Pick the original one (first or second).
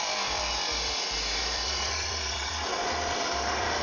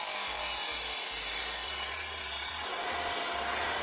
second